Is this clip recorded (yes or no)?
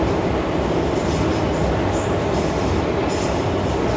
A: yes